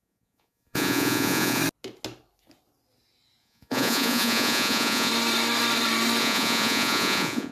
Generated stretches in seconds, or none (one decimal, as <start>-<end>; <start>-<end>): 0.0-1.6; 3.4-5.1; 6.2-7.5